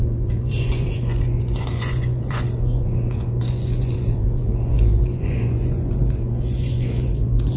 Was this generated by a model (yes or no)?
yes